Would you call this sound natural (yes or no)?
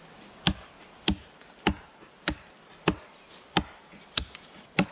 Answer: yes